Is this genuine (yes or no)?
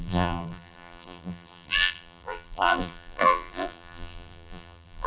no